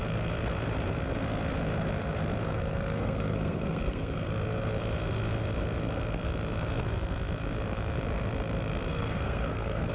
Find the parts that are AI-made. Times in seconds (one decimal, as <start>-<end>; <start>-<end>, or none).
2.4-4.3; 8.9-9.9